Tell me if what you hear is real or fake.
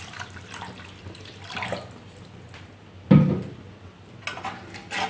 real